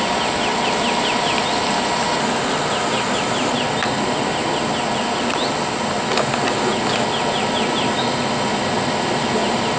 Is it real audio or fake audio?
real